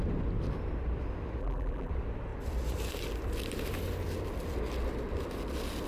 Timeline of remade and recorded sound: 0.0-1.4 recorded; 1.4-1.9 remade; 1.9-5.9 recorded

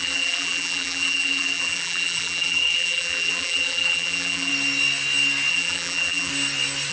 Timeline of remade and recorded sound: 0.0-4.5 remade; 4.5-5.5 recorded; 5.5-6.3 remade; 6.3-6.9 recorded

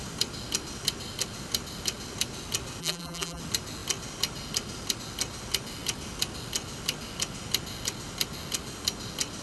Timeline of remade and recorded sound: 0.0-2.8 recorded; 2.8-3.4 remade; 3.4-9.4 recorded

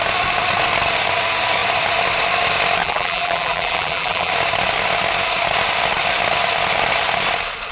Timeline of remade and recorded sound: 0.0-2.8 recorded; 2.8-4.3 remade; 4.3-7.7 recorded

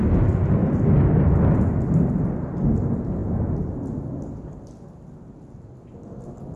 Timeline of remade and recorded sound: 0.0-0.6 recorded; 0.6-2.7 remade; 2.7-6.6 recorded

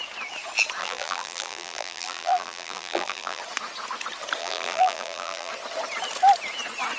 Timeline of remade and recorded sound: 0.0-0.8 recorded; 0.8-3.4 remade; 3.4-4.4 recorded; 4.4-5.5 remade; 5.5-7.0 recorded

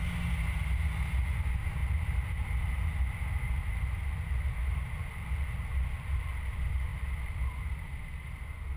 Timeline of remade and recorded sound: 0.0-1.8 recorded; 1.8-6.2 remade; 6.2-6.9 recorded; 6.9-8.3 remade; 8.3-8.8 recorded